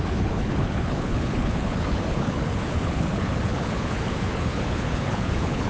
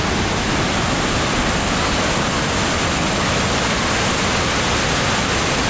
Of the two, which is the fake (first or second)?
first